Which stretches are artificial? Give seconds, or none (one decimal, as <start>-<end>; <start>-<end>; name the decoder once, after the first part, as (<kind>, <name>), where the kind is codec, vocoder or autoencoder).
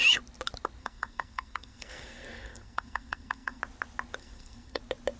0.8-3.6 (codec, SNAC); 4.2-4.8